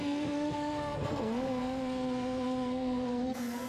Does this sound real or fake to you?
fake